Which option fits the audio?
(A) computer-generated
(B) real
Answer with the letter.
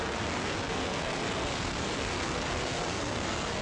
A